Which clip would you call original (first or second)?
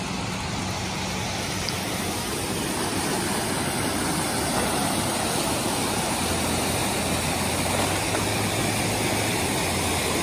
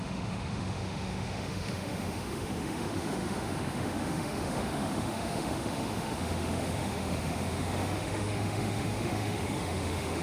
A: first